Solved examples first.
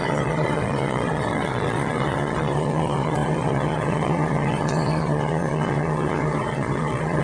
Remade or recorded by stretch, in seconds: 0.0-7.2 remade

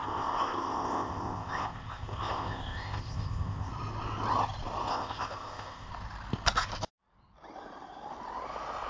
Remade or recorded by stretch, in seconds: 0.0-3.7 remade; 3.7-4.9 recorded; 4.9-5.9 remade; 5.9-8.9 recorded

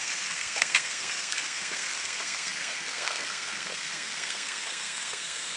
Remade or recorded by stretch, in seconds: 0.0-5.6 remade

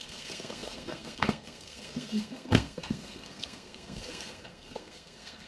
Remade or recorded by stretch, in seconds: 0.0-5.5 remade

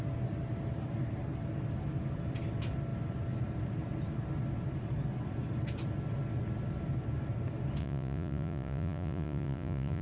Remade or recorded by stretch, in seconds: 0.0-7.8 recorded; 7.8-10.0 remade

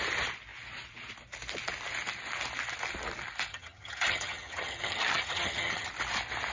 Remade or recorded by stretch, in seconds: 0.0-3.5 recorded; 3.5-5.9 remade; 5.9-6.5 recorded

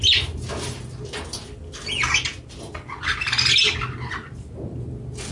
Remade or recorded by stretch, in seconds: 0.0-5.3 recorded

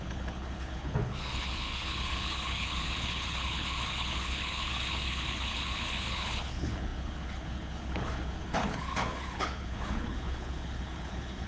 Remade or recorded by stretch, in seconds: 0.0-11.5 remade